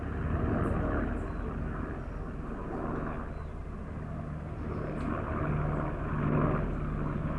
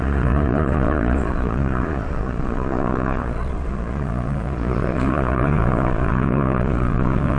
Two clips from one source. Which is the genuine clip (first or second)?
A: first